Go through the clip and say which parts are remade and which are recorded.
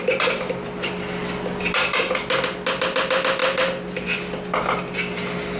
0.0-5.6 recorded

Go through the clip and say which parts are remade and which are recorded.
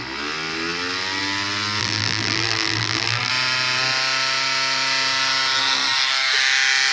0.0-1.8 recorded; 1.8-3.3 remade; 3.3-6.9 recorded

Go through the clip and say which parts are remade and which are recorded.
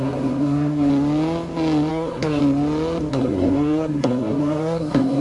0.0-0.9 remade; 0.9-1.9 recorded; 1.9-2.4 remade; 2.4-3.1 recorded; 3.1-5.2 remade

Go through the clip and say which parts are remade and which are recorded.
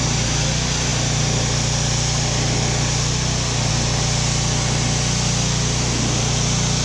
0.0-6.8 recorded